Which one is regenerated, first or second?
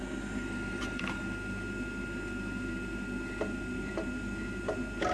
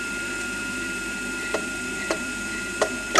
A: second